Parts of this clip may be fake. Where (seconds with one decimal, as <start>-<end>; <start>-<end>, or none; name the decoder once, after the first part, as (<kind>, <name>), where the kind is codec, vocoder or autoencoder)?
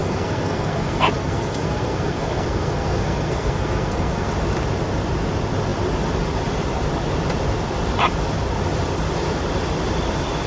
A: 0.0-4.3 (codec, SNAC)